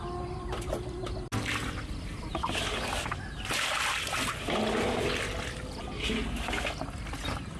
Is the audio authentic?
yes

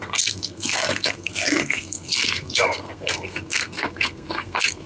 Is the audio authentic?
no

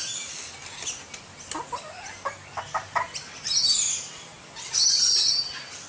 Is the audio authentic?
yes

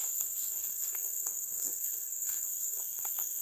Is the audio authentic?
no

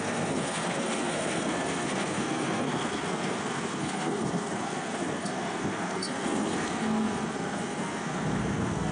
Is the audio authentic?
no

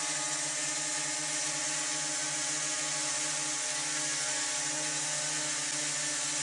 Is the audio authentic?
yes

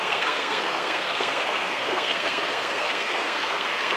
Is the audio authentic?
no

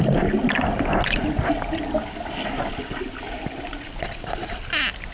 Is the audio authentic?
yes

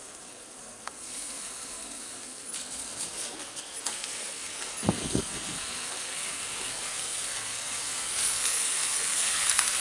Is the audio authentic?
no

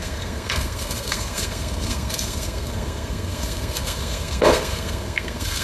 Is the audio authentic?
no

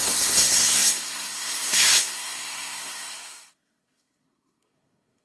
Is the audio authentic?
no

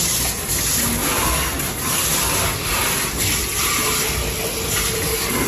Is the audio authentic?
yes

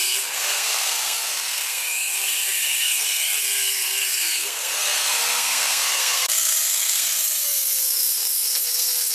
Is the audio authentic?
no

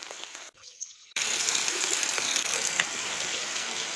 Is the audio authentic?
no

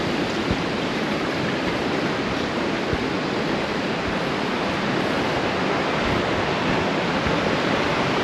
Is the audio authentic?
yes